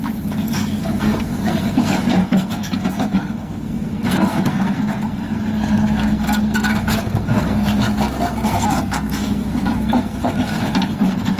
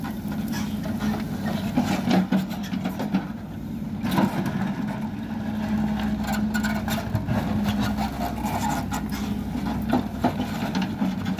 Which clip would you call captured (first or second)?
second